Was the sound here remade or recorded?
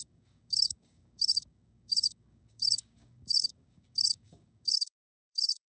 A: remade